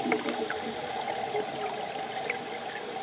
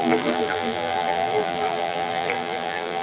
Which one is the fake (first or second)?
second